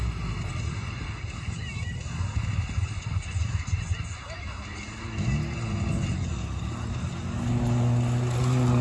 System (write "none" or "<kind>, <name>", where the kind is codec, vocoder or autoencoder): none